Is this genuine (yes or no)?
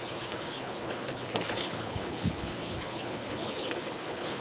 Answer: no